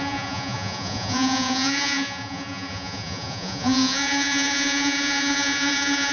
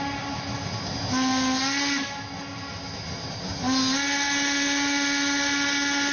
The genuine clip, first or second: second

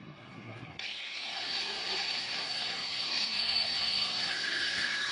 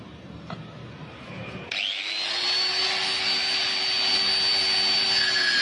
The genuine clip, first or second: second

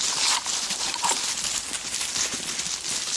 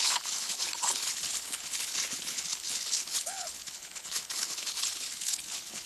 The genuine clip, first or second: first